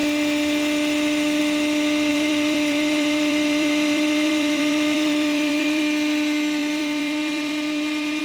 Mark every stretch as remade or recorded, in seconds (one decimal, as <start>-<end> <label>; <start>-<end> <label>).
0.0-2.1 recorded; 2.1-5.8 remade; 5.8-6.6 recorded; 6.6-8.2 remade